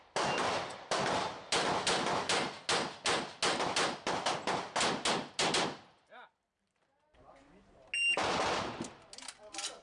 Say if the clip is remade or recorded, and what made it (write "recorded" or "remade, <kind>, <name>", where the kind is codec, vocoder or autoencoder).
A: recorded